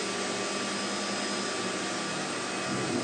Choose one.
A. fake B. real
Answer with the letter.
B